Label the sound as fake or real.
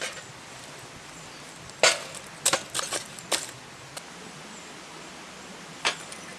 real